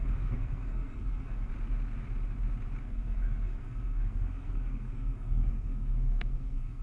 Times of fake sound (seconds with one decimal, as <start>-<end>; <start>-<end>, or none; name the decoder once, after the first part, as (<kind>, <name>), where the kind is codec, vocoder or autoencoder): 0.0-1.5 (codec, SNAC); 2.8-6.8